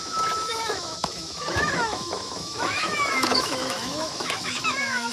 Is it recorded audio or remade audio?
remade